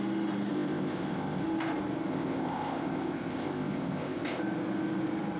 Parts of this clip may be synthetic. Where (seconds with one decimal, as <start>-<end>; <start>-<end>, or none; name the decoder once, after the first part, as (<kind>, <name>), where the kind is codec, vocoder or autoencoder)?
0.5-1.4 (codec, ZipCodec); 2.1-4.4